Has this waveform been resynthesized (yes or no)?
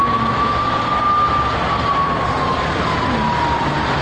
no